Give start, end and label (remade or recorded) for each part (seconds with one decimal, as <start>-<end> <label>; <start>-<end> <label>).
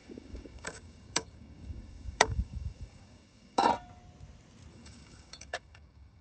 0.0-3.7 remade; 3.7-4.7 recorded; 4.7-6.2 remade